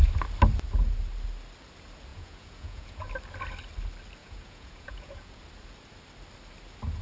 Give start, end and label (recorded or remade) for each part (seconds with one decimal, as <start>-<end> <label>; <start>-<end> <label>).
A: 0.0-2.1 recorded; 2.1-3.1 remade; 3.1-4.2 recorded; 4.2-5.4 remade; 5.4-7.0 recorded